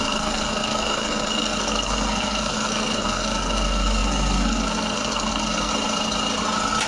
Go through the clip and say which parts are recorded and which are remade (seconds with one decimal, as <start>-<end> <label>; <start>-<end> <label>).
0.0-5.7 remade; 5.7-6.9 recorded